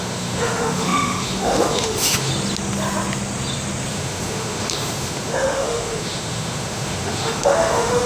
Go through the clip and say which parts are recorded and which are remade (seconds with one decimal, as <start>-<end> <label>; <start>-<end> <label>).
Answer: 0.0-2.3 remade; 2.3-3.9 recorded; 3.9-8.1 remade